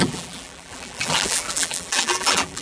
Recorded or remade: remade